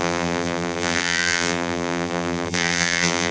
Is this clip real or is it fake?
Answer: fake